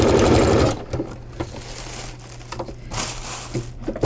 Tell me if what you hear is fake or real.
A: real